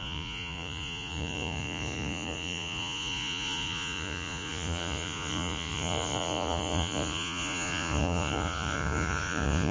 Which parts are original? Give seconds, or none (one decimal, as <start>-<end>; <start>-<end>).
none